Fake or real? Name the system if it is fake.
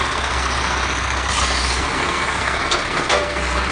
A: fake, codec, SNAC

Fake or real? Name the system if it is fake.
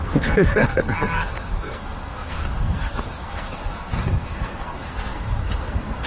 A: fake, codec, SNAC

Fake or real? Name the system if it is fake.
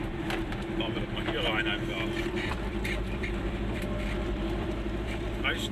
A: fake, vocoder, BigVGAN v2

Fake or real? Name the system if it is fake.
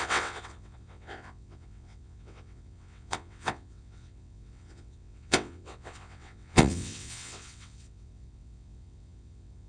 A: fake, vocoder, WaveNeXt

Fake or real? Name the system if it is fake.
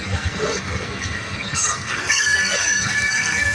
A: fake, codec, SNAC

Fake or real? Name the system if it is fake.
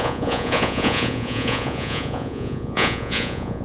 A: fake, vocoder, Vocos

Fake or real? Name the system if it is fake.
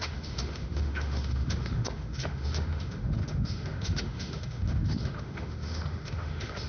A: fake, autoencoder, DAC-VAE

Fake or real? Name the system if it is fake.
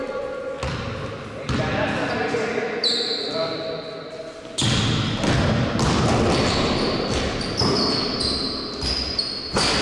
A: real